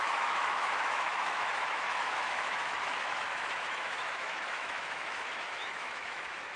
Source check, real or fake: fake